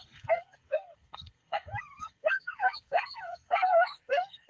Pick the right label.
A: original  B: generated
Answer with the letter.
B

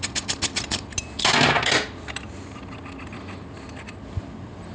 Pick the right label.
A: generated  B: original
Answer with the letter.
B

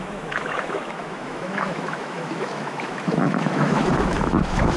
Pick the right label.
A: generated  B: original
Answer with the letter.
A